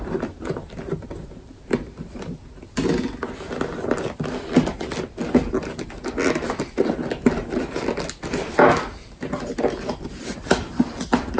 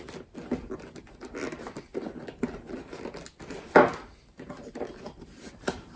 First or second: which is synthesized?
second